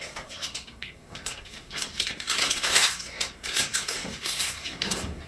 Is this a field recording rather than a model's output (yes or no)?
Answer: no